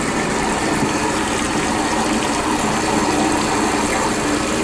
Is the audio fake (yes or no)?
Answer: no